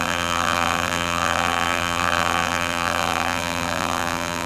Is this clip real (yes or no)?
no